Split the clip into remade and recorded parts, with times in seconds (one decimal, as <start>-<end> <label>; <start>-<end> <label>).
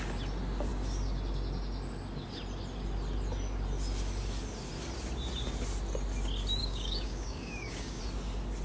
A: 0.0-6.6 recorded; 6.6-8.0 remade; 8.0-8.6 recorded